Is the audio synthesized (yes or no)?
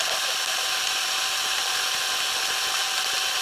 no